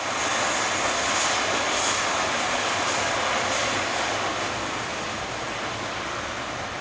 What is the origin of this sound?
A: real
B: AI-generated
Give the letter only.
A